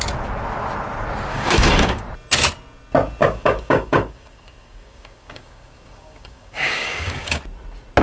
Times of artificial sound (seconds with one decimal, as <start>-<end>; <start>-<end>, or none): 1.3-2.0; 3.2-7.4